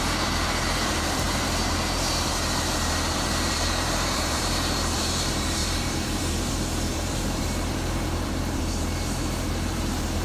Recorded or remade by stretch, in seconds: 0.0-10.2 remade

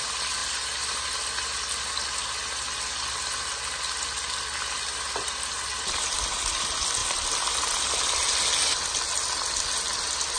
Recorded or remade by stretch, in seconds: 0.0-10.4 recorded

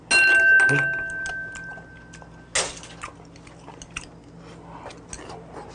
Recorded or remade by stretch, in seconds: 0.0-5.7 recorded

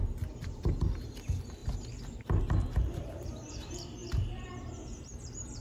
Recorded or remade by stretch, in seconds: 0.0-5.6 remade

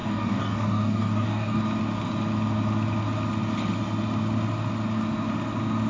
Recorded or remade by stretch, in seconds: 0.0-1.6 remade; 1.6-5.9 recorded

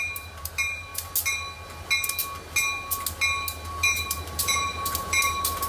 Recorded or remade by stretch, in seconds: 0.0-0.9 remade; 0.9-3.7 recorded; 3.7-5.7 remade